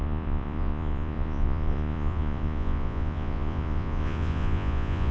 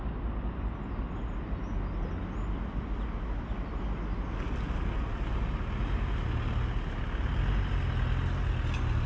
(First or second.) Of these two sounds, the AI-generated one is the first